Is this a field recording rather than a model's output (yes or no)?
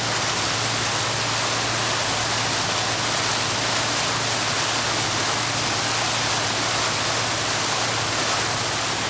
yes